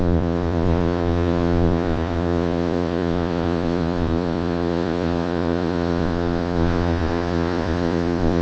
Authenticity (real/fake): fake